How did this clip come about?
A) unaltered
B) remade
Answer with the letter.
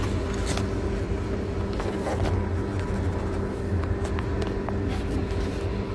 A